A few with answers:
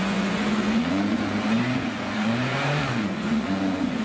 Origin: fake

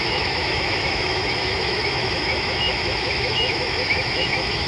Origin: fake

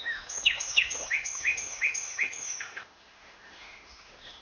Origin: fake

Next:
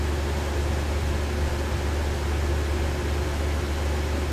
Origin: real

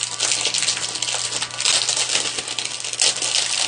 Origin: real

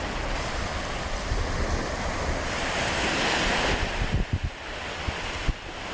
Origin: fake